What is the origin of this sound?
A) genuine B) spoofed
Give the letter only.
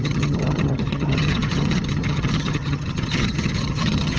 B